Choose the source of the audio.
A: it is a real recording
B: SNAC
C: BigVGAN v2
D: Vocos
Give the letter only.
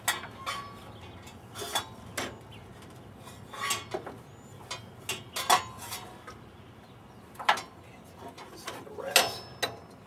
A